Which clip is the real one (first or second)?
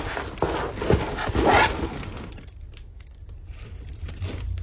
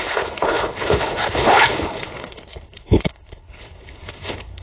first